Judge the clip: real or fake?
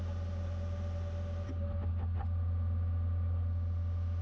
real